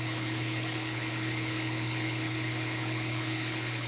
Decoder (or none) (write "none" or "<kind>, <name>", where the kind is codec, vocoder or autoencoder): codec, HILCodec